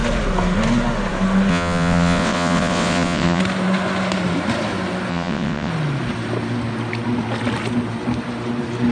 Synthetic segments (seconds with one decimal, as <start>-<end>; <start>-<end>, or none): 1.5-3.4; 5.1-5.7